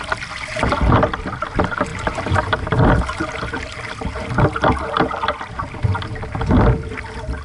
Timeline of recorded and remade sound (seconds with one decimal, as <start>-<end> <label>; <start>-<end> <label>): 0.0-7.4 recorded